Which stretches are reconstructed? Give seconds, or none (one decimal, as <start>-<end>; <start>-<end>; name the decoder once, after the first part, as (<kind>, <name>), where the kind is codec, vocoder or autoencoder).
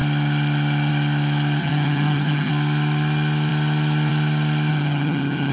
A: 1.6-2.5 (vocoder, HiFi-GAN); 4.7-5.5